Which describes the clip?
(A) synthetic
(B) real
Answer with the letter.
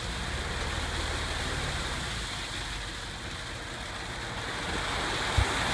B